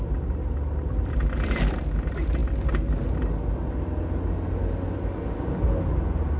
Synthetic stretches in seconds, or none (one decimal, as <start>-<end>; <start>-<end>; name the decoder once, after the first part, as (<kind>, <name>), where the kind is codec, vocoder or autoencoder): none